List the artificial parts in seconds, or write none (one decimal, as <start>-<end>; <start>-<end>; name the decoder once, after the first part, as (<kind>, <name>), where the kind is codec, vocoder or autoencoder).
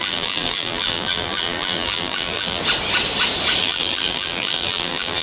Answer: 0.0-2.6 (vocoder, BigVGAN v2); 3.6-5.2